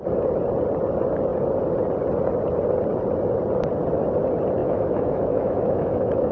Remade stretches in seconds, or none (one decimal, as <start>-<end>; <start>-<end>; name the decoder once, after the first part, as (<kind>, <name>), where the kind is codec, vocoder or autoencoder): 4.6-6.3 (autoencoder, DAC-VAE)